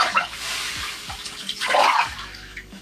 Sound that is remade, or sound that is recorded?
remade